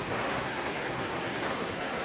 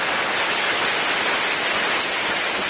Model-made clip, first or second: first